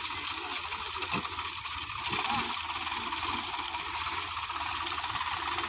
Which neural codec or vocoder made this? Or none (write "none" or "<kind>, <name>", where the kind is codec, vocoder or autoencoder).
none